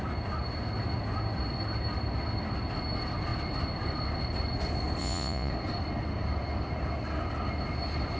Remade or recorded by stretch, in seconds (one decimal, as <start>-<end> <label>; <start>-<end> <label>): 0.0-5.0 recorded; 5.0-5.5 remade; 5.5-8.2 recorded

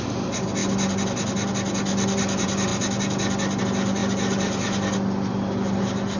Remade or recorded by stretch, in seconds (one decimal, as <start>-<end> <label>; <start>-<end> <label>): 0.0-6.2 recorded

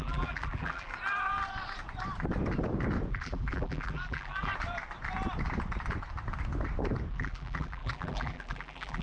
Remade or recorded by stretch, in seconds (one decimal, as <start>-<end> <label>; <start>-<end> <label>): 0.0-0.9 remade; 0.9-3.1 recorded; 3.1-4.5 remade; 4.5-7.1 recorded; 7.1-9.0 remade

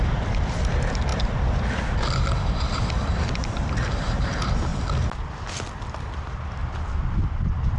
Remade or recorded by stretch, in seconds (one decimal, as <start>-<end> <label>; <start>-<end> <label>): 0.0-4.7 remade; 4.7-5.3 recorded; 5.3-6.6 remade; 6.6-7.2 recorded; 7.2-7.8 remade

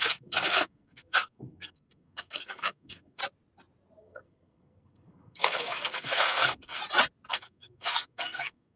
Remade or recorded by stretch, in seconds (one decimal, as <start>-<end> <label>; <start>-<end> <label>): 0.0-3.2 remade; 3.2-4.0 recorded; 4.0-6.8 remade; 6.8-7.3 recorded; 7.3-8.8 remade

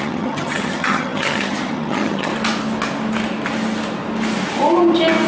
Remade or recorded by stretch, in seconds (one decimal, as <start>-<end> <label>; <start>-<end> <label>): 0.0-2.3 remade; 2.3-5.3 recorded